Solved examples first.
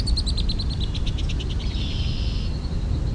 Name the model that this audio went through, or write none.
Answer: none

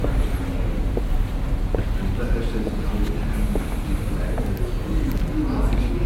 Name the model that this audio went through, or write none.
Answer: none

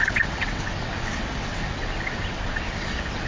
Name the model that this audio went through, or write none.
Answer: vocoder, WaveNeXt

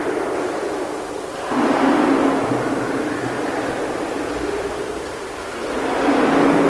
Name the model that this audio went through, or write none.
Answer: none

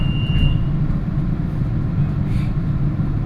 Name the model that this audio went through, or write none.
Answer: none